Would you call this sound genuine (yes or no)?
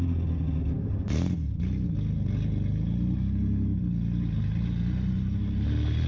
yes